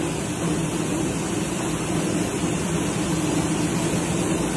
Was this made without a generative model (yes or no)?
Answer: yes